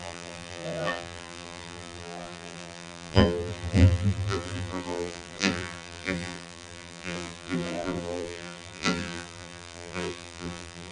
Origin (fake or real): fake